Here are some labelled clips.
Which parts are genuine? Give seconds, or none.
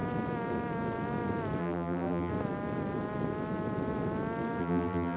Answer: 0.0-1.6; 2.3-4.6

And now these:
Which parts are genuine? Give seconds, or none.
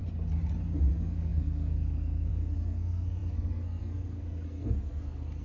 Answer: 0.0-0.9